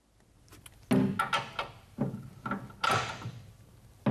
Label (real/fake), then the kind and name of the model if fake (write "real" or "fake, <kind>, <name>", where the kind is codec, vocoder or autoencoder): real